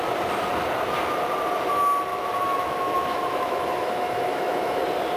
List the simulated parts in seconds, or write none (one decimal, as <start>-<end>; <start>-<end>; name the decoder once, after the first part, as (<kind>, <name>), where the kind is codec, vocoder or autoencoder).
2.1-4.8 (autoencoder, DAC-VAE)